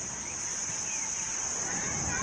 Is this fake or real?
real